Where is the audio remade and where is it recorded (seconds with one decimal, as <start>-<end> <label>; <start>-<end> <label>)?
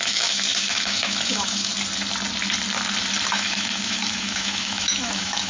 0.0-1.7 remade; 1.7-3.3 recorded; 3.3-5.5 remade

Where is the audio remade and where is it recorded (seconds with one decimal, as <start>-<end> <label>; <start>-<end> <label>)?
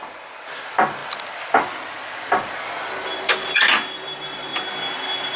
0.0-5.4 recorded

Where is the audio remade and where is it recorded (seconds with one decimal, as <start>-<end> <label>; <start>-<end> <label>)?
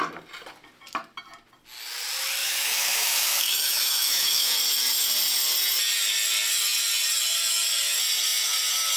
0.0-2.4 recorded; 2.4-4.5 remade; 4.5-9.0 recorded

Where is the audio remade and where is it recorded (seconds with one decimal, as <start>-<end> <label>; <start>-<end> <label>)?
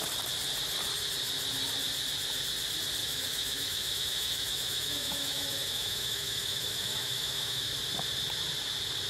0.0-3.0 recorded; 3.0-7.7 remade; 7.7-9.1 recorded